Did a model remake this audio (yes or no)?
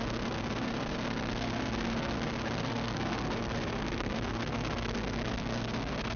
yes